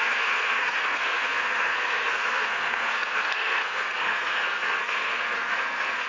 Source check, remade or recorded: remade